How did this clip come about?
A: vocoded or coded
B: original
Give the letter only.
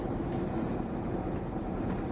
B